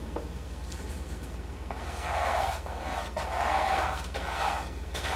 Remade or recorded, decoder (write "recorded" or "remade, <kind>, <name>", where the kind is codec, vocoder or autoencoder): remade, codec, SNAC